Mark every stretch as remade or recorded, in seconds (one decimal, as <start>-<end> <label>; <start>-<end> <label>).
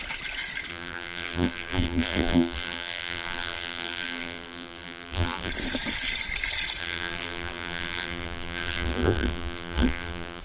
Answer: 0.0-0.7 recorded; 0.7-5.5 remade; 5.5-6.8 recorded; 6.8-10.4 remade